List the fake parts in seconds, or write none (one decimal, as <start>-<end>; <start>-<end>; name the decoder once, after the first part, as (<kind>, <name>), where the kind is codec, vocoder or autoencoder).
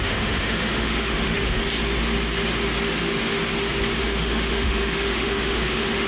0.0-1.6 (autoencoder, DAC-VAE); 4.0-6.1